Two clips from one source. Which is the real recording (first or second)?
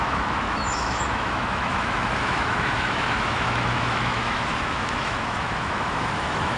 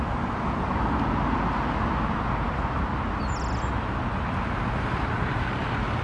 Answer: second